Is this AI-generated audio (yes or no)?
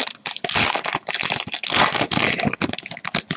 no